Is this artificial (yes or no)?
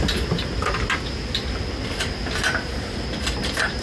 yes